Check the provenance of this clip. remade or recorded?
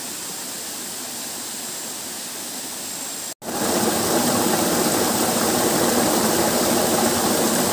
recorded